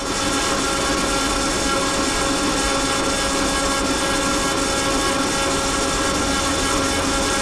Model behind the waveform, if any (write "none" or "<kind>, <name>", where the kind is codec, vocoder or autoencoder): none